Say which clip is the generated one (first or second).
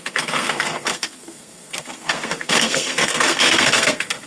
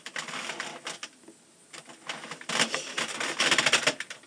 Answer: first